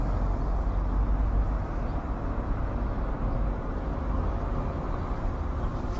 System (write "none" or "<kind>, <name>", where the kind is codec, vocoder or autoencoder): none